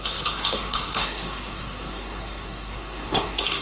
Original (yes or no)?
no